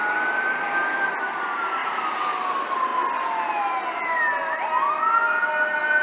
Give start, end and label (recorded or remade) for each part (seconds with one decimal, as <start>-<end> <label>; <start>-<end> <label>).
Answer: 0.0-6.0 recorded